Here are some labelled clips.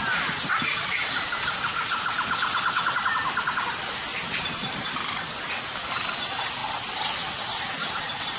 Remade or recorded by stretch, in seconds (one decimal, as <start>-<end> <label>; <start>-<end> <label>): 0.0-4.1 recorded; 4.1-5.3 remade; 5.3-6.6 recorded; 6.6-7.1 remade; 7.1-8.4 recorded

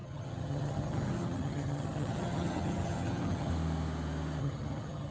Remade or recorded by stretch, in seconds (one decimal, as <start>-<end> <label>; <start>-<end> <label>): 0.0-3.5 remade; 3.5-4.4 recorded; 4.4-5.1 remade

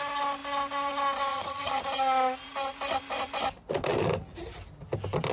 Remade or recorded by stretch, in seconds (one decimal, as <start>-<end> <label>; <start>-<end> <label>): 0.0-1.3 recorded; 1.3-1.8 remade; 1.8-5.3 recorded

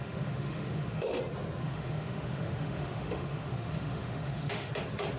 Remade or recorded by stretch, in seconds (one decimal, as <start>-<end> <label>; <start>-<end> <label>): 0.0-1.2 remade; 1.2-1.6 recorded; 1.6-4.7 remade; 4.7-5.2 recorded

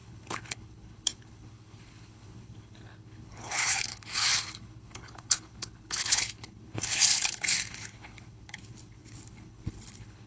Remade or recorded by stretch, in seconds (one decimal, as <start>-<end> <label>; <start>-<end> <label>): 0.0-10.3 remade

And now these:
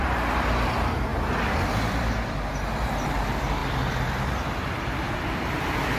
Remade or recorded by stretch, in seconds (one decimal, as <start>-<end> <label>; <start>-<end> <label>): 0.0-3.6 remade; 3.6-4.8 recorded; 4.8-6.0 remade